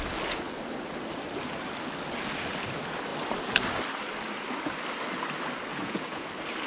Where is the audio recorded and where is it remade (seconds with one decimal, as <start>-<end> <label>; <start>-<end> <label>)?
0.0-5.7 recorded; 5.7-6.3 remade; 6.3-6.7 recorded